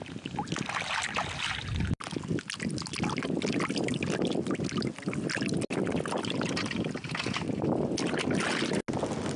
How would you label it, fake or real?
real